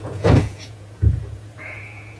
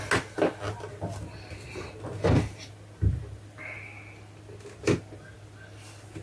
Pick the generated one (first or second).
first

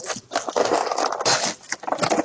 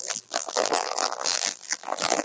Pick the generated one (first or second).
second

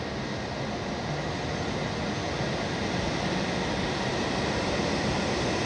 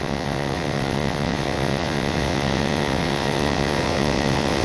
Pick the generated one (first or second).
second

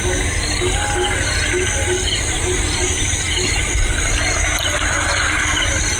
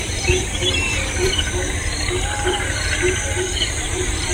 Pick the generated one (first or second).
second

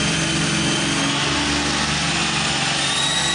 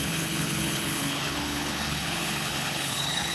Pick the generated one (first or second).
second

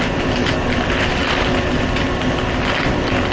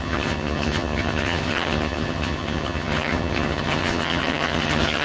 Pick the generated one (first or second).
second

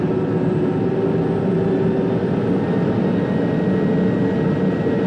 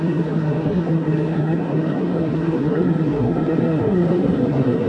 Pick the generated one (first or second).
second